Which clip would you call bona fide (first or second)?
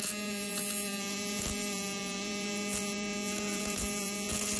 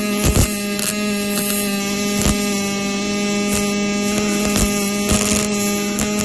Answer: second